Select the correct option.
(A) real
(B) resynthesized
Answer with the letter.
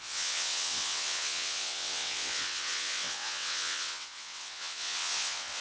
B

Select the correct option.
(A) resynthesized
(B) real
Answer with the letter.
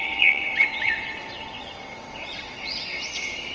A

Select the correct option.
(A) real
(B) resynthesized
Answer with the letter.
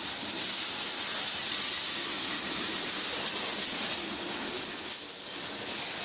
A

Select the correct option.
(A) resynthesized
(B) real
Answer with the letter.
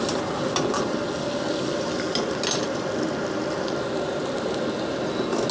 B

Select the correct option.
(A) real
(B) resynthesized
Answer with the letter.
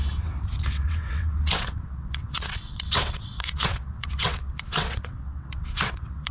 B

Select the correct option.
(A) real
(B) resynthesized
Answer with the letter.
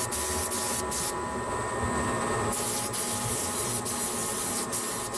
A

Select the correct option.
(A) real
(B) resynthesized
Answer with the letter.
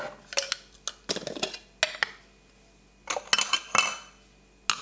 A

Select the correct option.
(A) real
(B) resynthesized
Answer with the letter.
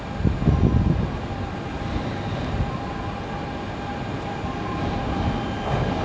A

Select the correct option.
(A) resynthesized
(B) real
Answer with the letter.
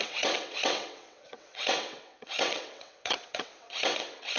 A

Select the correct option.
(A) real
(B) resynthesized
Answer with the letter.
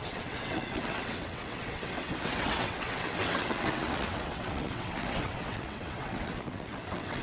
B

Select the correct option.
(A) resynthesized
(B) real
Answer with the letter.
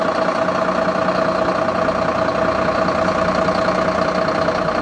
B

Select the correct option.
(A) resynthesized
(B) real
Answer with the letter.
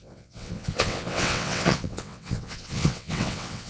A